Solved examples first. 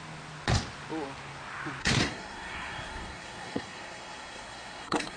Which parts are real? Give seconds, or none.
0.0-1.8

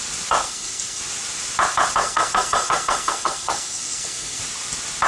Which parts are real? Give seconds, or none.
0.0-0.4; 1.0-2.0; 4.4-5.1